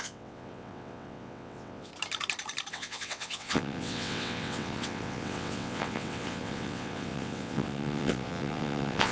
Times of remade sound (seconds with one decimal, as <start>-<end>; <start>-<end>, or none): 0.0-1.9; 2.7-9.1